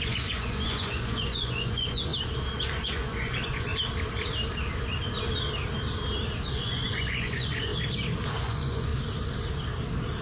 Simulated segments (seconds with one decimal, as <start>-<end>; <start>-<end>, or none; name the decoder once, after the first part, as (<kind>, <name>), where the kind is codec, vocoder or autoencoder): 0.0-2.1 (vocoder, Vocos); 2.8-3.7; 6.5-7.7; 8.3-8.9